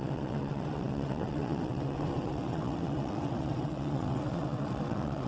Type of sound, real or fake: fake